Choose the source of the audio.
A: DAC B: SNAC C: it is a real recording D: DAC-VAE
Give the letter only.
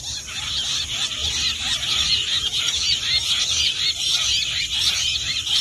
C